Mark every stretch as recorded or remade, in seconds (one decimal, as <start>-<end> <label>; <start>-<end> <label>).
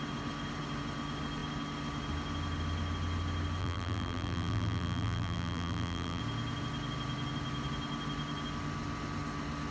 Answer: 0.0-3.6 recorded; 3.6-6.2 remade; 6.2-9.7 recorded